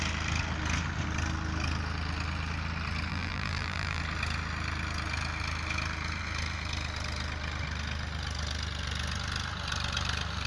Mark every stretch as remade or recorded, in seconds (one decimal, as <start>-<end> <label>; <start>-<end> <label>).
0.0-3.1 recorded; 3.1-4.0 remade; 4.0-10.5 recorded